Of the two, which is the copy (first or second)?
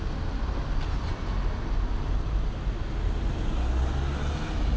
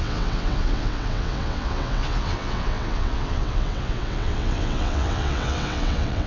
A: second